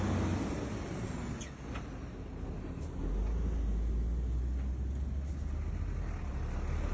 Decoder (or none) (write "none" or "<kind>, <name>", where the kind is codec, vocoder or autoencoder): none